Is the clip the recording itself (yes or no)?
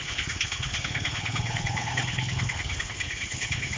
no